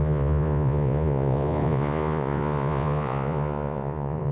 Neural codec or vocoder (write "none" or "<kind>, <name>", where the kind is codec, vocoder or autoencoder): vocoder, Vocos